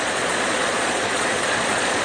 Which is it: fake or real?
fake